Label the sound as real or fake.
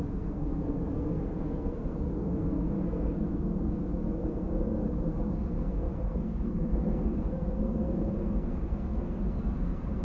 fake